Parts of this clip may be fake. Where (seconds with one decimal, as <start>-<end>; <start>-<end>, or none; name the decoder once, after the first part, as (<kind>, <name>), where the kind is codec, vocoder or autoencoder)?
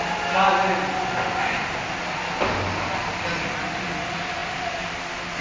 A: 4.4-4.9 (vocoder, BigVGAN v2)